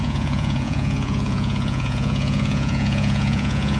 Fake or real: fake